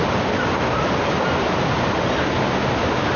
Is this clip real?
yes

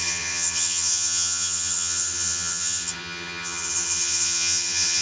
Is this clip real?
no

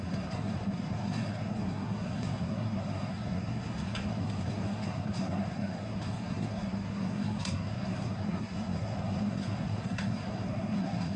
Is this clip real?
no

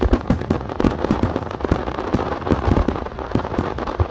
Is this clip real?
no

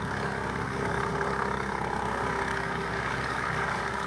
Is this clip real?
no